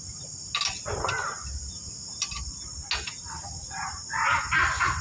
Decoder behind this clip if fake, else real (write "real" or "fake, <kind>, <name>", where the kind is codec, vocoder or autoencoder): real